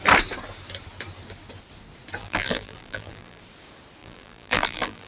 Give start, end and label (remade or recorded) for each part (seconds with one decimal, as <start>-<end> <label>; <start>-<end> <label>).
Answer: 0.0-2.2 recorded; 2.2-3.4 remade; 3.4-4.0 recorded; 4.0-5.1 remade